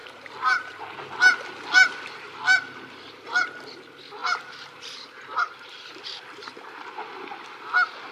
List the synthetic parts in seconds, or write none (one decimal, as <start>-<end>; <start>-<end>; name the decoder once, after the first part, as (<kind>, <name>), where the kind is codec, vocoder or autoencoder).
4.2-5.8 (vocoder, BigVGAN v2)